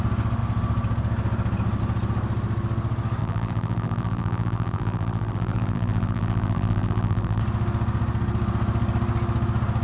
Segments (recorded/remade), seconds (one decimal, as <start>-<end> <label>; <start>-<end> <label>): 0.0-3.2 recorded; 3.2-7.4 remade; 7.4-9.8 recorded

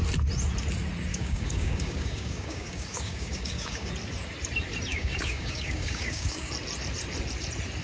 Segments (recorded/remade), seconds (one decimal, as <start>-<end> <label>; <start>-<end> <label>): 0.0-1.1 recorded; 1.1-3.9 remade; 3.9-4.9 recorded; 4.9-6.5 remade; 6.5-7.8 recorded

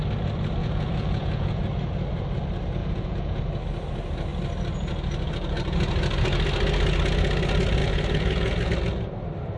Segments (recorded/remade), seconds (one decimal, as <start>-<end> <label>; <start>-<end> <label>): 0.0-0.6 recorded; 0.6-1.6 remade; 1.6-2.8 recorded; 2.8-3.4 remade; 3.4-7.8 recorded; 7.8-8.7 remade; 8.7-9.6 recorded

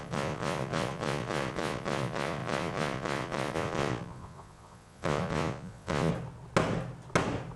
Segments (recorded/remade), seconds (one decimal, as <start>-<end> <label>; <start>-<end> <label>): 0.0-6.1 remade; 6.1-7.6 recorded

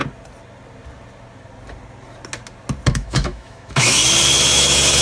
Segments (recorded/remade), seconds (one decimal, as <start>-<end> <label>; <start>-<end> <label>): 0.0-2.9 recorded; 2.9-4.0 remade; 4.0-4.5 recorded; 4.5-5.0 remade

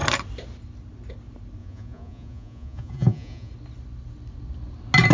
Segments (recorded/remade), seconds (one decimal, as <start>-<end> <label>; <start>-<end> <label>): 0.0-1.6 recorded; 1.6-3.5 remade; 3.5-5.1 recorded

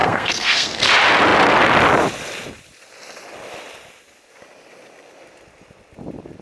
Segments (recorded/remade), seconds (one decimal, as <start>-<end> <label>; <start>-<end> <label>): 0.0-0.8 remade; 0.8-6.4 recorded

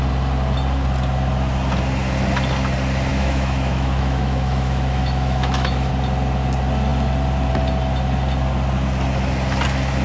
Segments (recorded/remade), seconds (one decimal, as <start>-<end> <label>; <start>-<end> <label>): 0.0-3.1 recorded; 3.1-5.9 remade; 5.9-10.0 recorded